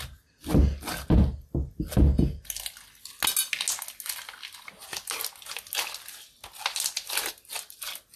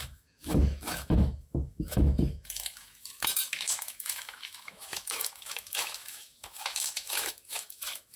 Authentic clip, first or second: first